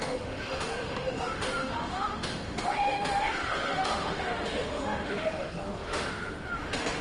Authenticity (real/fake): fake